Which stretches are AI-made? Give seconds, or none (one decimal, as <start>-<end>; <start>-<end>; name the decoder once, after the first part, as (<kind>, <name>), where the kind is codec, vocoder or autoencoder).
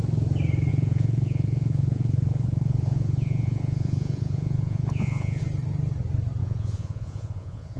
0.7-5.4 (vocoder, Vocos); 6.4-7.8